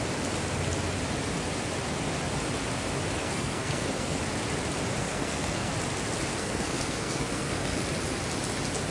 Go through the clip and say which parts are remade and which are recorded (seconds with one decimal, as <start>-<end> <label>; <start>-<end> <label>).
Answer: 0.0-3.2 recorded; 3.2-4.2 remade; 4.2-5.0 recorded; 5.0-5.7 remade; 5.7-6.3 recorded; 6.3-7.8 remade; 7.8-8.9 recorded